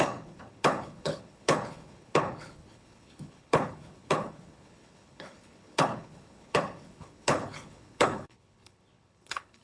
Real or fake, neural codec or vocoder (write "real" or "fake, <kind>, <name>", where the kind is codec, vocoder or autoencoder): fake, codec, HILCodec